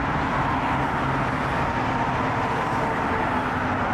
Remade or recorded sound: recorded